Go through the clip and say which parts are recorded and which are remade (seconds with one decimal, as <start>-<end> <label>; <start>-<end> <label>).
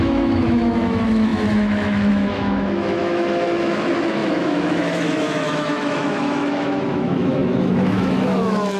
0.0-8.8 remade